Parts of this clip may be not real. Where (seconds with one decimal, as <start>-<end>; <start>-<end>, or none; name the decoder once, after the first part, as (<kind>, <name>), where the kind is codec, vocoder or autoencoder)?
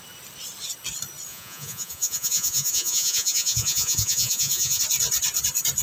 1.3-4.8 (vocoder, Vocos)